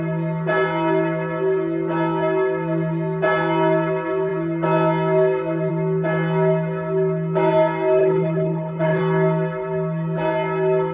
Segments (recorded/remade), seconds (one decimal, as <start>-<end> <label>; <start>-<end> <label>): 0.0-8.0 recorded; 8.0-9.0 remade; 9.0-10.9 recorded